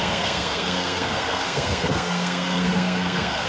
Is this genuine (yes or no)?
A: no